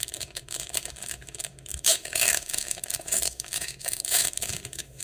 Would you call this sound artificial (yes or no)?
yes